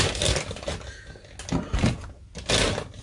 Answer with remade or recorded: recorded